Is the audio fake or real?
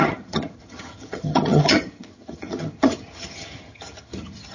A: fake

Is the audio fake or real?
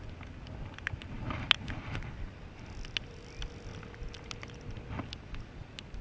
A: real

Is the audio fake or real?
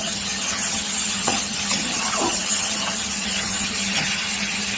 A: fake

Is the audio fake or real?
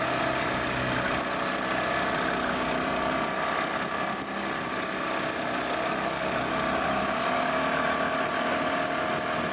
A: real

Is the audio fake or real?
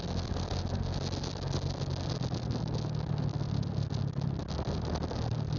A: real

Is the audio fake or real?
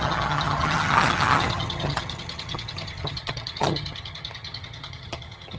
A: fake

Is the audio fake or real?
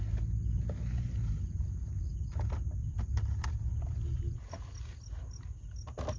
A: real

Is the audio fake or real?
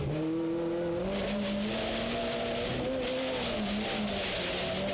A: real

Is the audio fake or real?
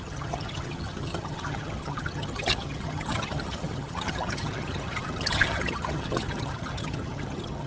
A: fake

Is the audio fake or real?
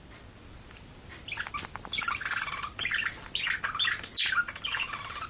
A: real